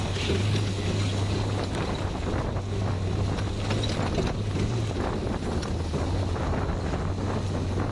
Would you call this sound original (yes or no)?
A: yes